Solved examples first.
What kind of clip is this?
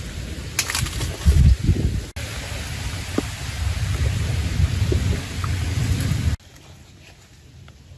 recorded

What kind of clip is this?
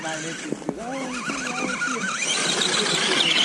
recorded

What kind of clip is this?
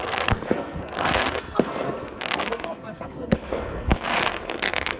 remade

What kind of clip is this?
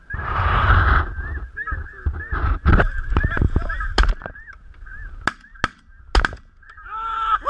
recorded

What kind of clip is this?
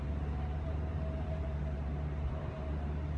remade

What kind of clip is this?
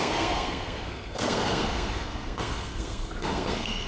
remade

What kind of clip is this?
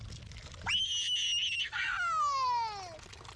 recorded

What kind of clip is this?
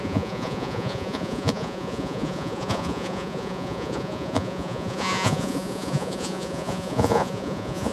remade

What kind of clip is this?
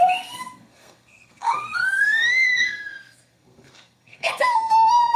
remade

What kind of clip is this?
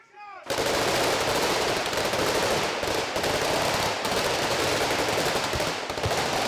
recorded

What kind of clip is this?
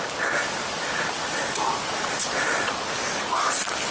recorded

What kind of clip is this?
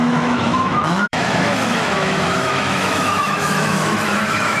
remade